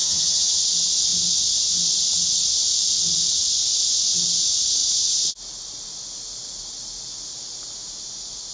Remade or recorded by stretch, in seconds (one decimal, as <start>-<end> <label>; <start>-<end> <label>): 0.0-0.6 remade; 0.6-8.5 recorded